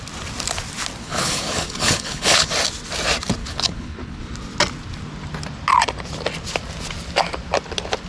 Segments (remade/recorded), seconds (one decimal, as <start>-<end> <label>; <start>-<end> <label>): 0.0-1.0 recorded; 1.0-2.5 remade; 2.5-3.4 recorded; 3.4-4.2 remade; 4.2-8.1 recorded